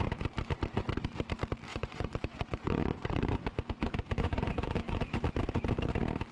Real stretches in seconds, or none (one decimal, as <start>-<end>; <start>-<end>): 0.0-1.7; 5.2-6.3